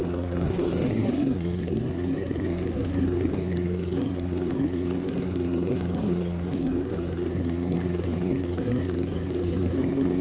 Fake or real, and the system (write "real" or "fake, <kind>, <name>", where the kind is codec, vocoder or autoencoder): fake, codec, SNAC